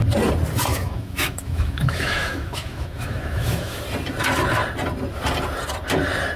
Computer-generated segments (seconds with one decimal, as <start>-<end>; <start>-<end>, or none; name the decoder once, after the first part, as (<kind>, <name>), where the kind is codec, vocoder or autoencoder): 0.7-3.8 (autoencoder, DAC-VAE)